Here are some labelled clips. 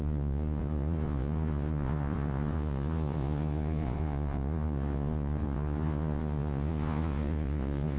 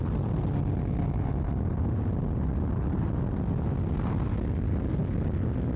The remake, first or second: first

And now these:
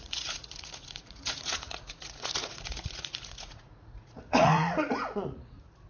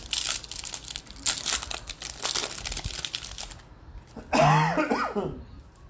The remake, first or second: first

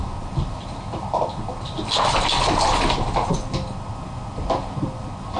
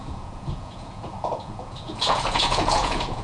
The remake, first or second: second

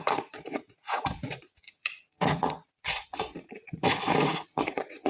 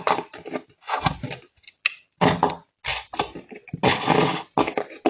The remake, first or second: first